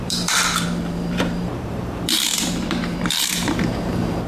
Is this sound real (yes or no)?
no